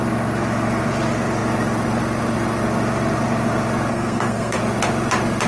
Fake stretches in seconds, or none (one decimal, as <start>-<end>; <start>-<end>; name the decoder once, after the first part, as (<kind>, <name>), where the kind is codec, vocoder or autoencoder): 3.9-4.6 (codec, SNAC)